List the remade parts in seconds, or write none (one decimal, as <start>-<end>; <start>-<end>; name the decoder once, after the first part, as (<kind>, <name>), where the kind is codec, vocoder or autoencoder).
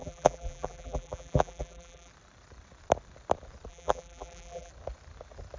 0.0-2.1 (vocoder, BigVGAN v2); 3.7-4.7